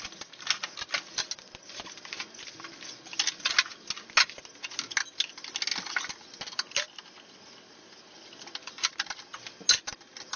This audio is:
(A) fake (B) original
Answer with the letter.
B